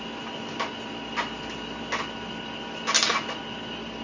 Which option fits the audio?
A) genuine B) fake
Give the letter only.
A